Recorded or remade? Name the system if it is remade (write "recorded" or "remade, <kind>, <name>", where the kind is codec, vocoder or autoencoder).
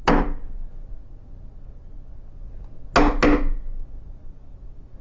recorded